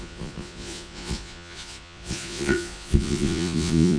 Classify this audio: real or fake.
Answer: fake